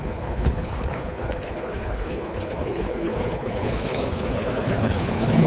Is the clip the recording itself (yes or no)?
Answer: no